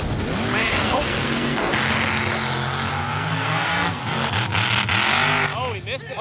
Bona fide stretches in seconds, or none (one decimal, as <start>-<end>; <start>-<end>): 0.0-0.6; 1.7-3.0; 4.3-6.2